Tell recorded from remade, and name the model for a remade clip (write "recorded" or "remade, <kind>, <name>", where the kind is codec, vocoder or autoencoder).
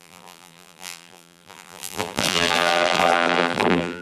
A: remade, vocoder, BigVGAN v2